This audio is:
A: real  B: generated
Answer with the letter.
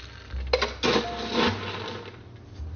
A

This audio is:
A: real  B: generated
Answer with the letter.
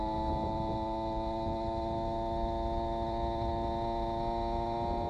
A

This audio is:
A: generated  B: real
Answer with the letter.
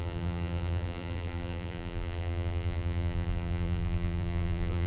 A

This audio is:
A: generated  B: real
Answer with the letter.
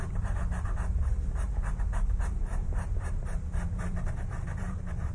A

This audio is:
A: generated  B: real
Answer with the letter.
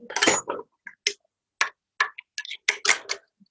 B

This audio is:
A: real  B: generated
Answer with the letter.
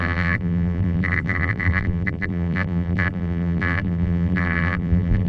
B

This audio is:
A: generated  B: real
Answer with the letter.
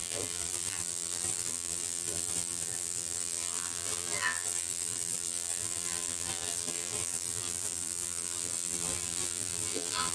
A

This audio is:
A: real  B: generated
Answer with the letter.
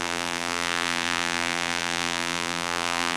B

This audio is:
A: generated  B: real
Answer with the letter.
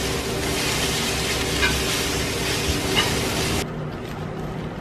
B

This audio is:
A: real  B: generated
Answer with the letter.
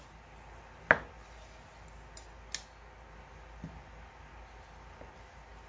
A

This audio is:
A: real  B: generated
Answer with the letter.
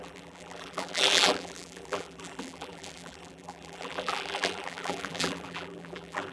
B